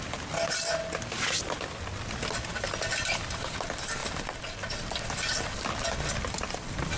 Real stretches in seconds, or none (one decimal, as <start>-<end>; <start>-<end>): 0.0-7.0